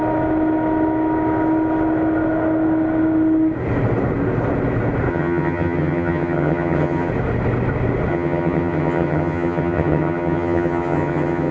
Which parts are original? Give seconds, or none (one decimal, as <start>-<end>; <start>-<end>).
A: 0.0-5.1; 7.1-8.1